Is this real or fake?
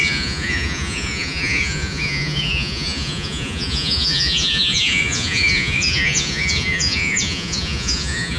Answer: fake